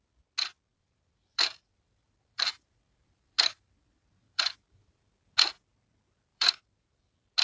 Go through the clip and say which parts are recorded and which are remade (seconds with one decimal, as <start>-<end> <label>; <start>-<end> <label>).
0.0-0.7 recorded; 0.7-5.1 remade; 5.1-6.3 recorded; 6.3-7.0 remade; 7.0-7.4 recorded